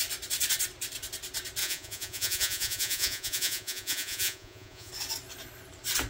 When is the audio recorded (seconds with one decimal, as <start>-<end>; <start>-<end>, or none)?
0.0-1.6; 4.9-6.1